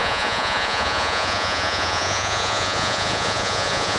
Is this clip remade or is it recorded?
remade